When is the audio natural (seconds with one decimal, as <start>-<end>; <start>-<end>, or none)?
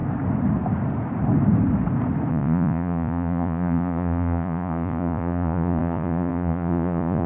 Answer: 0.0-2.3